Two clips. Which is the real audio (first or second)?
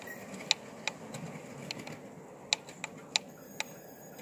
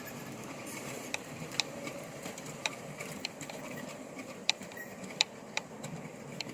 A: first